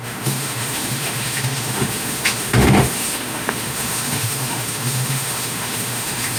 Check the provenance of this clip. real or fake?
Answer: fake